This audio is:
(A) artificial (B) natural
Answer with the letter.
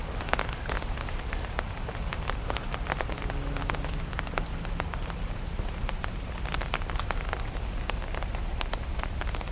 B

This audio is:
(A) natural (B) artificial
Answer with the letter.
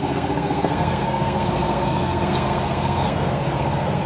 B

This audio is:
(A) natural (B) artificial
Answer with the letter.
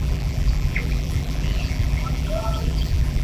B